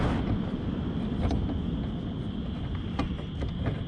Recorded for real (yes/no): yes